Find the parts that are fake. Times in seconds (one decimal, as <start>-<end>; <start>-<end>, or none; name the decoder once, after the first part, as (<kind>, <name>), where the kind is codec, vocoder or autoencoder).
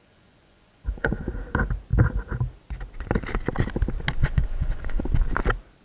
0.0-1.2 (vocoder, Vocos); 4.2-5.0